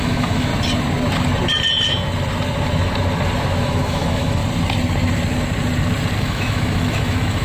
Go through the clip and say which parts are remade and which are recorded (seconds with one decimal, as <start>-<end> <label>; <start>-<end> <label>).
0.0-0.5 remade; 0.5-3.6 recorded; 3.6-4.4 remade; 4.4-6.2 recorded; 6.2-7.4 remade